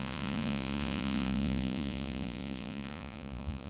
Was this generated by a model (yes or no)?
yes